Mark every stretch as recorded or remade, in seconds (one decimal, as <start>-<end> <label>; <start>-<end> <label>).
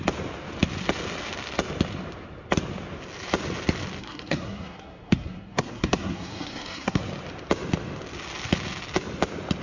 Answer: 0.0-4.0 recorded; 4.0-7.0 remade; 7.0-9.6 recorded